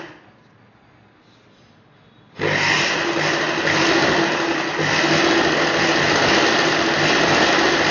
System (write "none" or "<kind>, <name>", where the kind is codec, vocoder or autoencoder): none